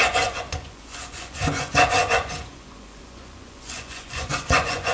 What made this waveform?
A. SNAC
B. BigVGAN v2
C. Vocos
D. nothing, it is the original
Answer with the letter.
C